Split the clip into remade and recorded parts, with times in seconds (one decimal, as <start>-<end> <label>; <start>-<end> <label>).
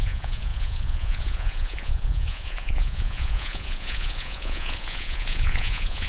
0.0-6.1 remade